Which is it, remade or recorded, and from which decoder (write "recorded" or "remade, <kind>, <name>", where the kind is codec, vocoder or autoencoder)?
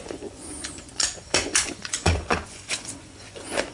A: remade, vocoder, Vocos